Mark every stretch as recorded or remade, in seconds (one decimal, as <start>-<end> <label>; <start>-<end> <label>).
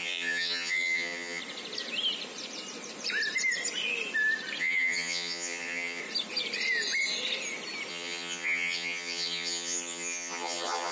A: 0.0-1.4 remade; 1.4-4.6 recorded; 4.6-6.0 remade; 6.0-7.9 recorded; 7.9-10.9 remade